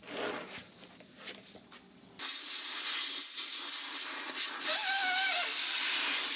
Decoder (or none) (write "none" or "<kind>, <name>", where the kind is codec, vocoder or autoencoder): none